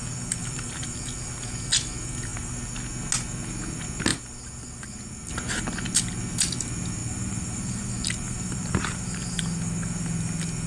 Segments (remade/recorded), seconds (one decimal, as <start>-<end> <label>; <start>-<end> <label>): 0.0-0.4 recorded; 0.4-1.0 remade; 1.0-4.1 recorded; 4.1-5.3 remade; 5.3-7.0 recorded; 7.0-9.4 remade; 9.4-10.7 recorded